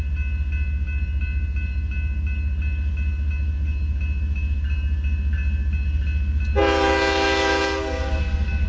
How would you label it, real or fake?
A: real